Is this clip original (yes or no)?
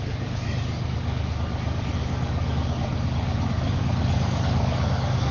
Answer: no